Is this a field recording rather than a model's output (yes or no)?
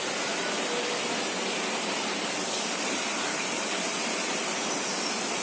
yes